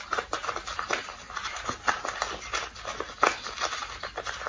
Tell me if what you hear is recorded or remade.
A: recorded